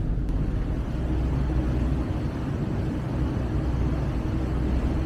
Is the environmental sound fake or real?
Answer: real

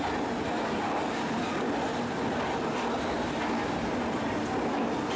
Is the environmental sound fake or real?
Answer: real